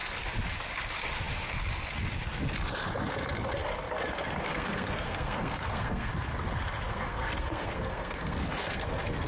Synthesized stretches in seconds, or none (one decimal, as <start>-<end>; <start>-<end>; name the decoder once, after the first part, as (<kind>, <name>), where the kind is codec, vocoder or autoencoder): 4.4-6.1 (codec, SNAC); 6.9-9.3